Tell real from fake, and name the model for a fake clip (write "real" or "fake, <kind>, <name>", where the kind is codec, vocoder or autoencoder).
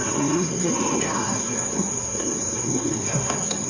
fake, codec, SNAC